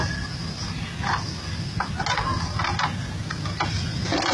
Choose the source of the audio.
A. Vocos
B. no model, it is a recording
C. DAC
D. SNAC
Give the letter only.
B